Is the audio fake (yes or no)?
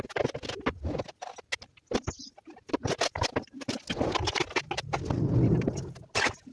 no